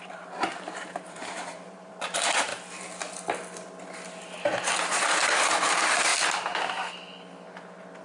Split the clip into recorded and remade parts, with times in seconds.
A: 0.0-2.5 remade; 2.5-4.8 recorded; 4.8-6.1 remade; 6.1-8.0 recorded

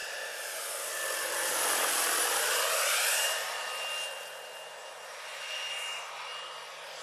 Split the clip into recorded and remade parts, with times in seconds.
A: 0.0-3.0 remade; 3.0-7.0 recorded

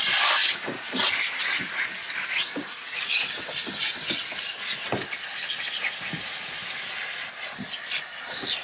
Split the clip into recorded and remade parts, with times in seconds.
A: 0.0-2.0 recorded; 2.0-3.3 remade; 3.3-8.6 recorded

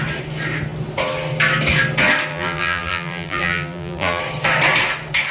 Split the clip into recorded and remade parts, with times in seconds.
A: 0.0-2.3 recorded; 2.3-4.2 remade; 4.2-5.3 recorded

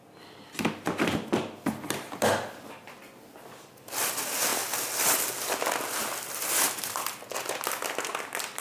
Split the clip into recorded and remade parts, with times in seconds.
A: 0.0-8.6 recorded

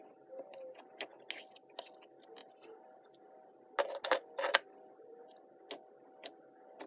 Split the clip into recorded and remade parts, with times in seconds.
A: 0.0-6.9 recorded

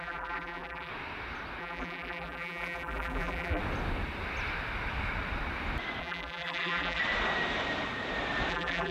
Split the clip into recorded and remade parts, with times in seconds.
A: 0.0-0.9 remade; 0.9-1.6 recorded; 1.6-3.6 remade; 3.6-6.0 recorded; 6.0-7.0 remade; 7.0-8.5 recorded; 8.5-8.9 remade